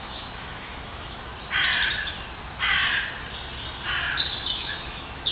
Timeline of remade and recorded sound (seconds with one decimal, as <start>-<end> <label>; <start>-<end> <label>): 0.0-1.3 remade; 1.3-4.5 recorded; 4.5-5.3 remade